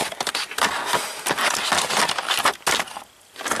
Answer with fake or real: real